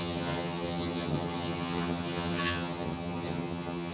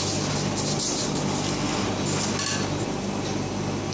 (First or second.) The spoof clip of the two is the first